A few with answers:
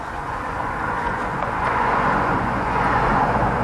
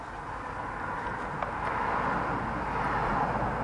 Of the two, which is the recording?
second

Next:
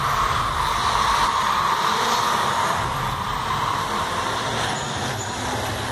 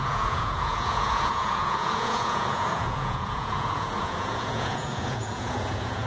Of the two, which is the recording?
first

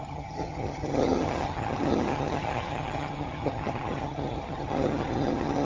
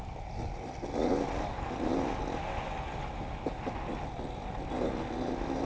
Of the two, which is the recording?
second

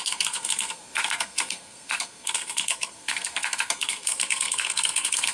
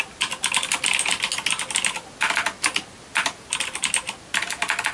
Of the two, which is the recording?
second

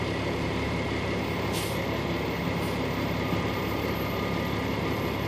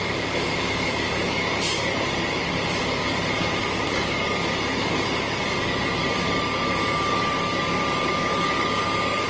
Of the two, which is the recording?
first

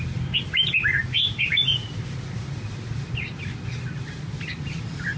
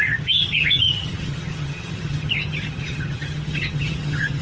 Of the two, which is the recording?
first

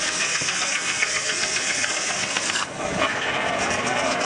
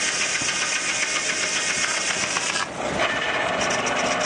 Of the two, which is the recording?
second